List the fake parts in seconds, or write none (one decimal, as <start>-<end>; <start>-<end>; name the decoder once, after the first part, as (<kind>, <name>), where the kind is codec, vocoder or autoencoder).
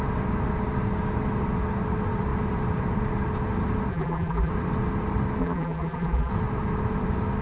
3.9-4.5 (vocoder, BigVGAN v2); 5.4-6.3